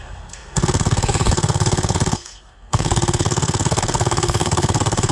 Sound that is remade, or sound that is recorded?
remade